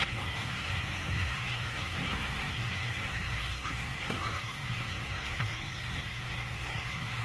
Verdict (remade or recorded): remade